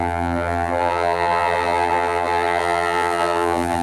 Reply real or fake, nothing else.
fake